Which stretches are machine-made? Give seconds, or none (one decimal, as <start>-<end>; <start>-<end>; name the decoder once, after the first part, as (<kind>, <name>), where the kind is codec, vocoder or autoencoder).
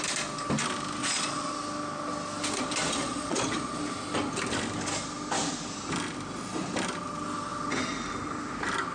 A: 1.0-1.5 (vocoder, Vocos); 3.0-3.7